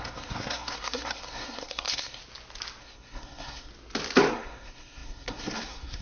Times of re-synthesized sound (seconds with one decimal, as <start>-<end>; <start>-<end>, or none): 0.0-2.2; 2.8-3.7; 4.3-6.0